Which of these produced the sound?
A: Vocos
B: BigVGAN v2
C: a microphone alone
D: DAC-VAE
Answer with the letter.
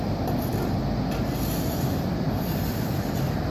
C